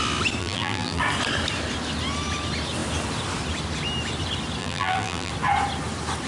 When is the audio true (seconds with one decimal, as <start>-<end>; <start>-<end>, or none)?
0.0-0.4; 1.0-4.6; 5.3-6.3